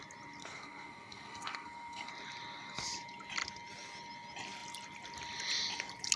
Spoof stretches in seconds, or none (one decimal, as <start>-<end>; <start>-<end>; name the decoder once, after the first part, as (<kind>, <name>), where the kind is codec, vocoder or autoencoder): 0.4-2.1 (codec, SNAC)